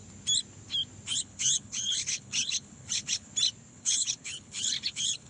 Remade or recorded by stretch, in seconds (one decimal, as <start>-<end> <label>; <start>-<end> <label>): 0.0-1.1 recorded; 1.1-3.3 remade; 3.3-3.7 recorded; 3.7-5.3 remade

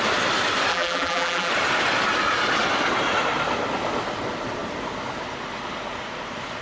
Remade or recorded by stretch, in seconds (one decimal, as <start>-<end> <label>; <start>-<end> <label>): 0.0-0.7 recorded; 0.7-1.5 remade; 1.5-6.6 recorded

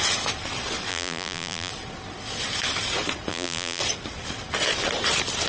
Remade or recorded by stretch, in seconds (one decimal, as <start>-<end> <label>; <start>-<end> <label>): 0.0-0.9 recorded; 0.9-1.7 remade; 1.7-3.3 recorded; 3.3-3.8 remade; 3.8-5.5 recorded

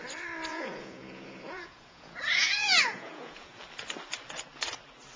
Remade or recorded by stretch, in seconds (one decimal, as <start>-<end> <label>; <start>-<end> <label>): 0.0-0.5 recorded; 0.5-3.6 remade; 3.6-5.2 recorded

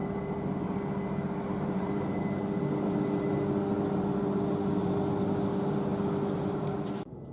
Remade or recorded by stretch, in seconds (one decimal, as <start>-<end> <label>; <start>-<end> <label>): 0.0-7.3 recorded